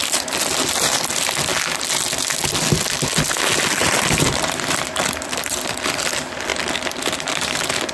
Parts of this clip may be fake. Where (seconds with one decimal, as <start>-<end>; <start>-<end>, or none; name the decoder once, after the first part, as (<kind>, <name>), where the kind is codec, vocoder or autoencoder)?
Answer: 0.0-1.5 (vocoder, BigVGAN v2); 3.8-7.9